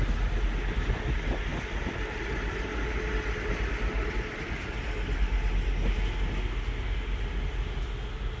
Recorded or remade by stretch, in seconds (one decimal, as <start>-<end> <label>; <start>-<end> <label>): 0.0-8.4 recorded